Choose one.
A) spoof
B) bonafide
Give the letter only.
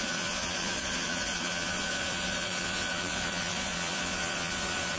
A